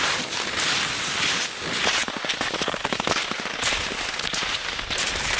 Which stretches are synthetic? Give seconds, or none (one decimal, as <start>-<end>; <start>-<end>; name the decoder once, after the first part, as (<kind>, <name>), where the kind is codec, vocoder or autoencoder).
none